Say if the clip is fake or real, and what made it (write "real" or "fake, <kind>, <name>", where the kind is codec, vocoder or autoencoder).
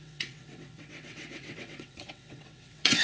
fake, vocoder, WaveNeXt